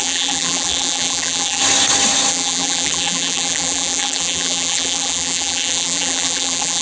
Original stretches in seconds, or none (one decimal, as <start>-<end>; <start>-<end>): 1.6-2.3